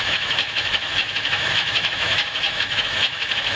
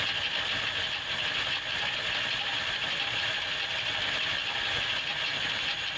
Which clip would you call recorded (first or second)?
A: second